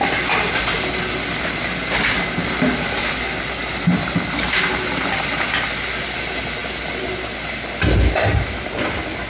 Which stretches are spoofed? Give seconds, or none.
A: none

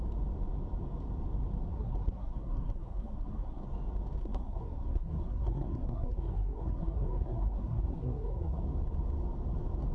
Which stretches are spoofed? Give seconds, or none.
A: 1.7-3.6 (codec, SNAC); 4.2-8.6

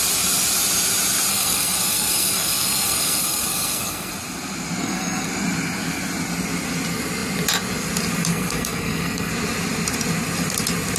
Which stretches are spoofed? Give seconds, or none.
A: 1.3-4.1 (codec, SNAC); 4.8-5.3; 8.3-9.3

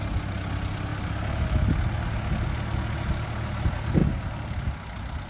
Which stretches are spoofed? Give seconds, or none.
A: none